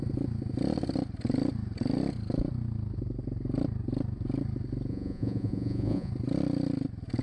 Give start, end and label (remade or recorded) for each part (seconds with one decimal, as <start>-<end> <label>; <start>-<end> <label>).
0.0-4.9 recorded; 4.9-6.1 remade; 6.1-7.2 recorded